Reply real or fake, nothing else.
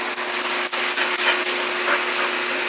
real